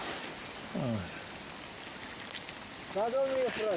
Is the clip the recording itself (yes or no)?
yes